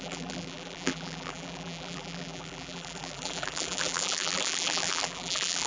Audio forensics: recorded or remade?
remade